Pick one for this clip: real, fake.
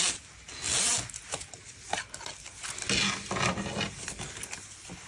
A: real